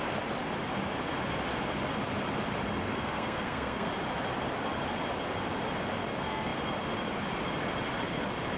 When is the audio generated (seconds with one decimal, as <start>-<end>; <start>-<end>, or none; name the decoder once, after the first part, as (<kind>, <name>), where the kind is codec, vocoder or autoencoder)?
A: 2.8-3.9 (codec, SNAC)

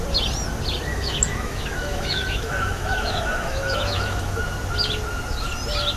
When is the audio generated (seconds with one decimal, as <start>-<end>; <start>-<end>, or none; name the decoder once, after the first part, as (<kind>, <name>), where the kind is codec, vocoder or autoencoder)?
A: 0.9-4.4 (autoencoder, DAC-VAE)